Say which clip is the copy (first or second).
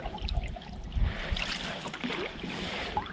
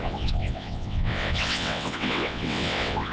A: second